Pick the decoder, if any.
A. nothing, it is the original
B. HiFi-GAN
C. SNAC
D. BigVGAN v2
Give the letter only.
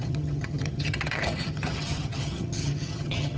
B